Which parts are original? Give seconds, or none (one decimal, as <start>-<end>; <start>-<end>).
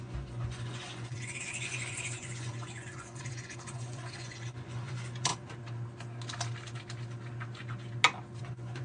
5.3-8.4